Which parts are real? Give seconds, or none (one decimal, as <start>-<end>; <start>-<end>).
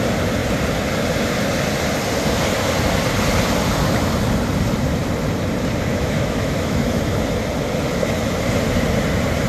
0.0-5.9; 7.0-9.5